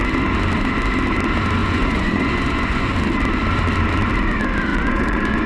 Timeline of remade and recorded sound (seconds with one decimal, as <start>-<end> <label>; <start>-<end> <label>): 0.0-1.6 recorded; 1.6-2.9 remade; 2.9-4.7 recorded; 4.7-5.5 remade

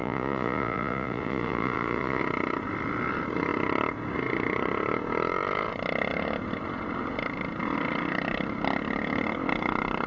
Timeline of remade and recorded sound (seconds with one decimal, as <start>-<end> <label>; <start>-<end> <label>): 0.0-2.2 remade; 2.2-10.1 recorded